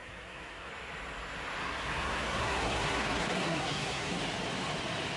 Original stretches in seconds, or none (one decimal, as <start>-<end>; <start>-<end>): 0.7-1.6; 4.2-5.2